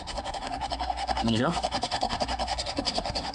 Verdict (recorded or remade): remade